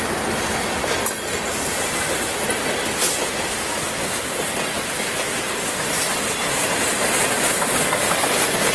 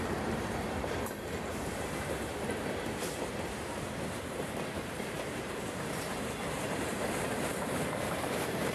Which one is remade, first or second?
second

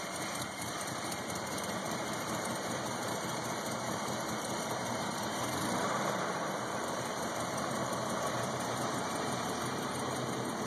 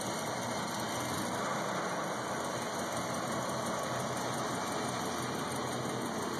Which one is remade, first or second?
first